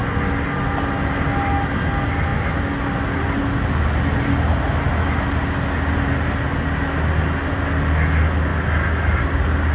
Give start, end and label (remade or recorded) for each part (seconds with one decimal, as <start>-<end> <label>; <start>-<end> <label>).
0.0-9.7 recorded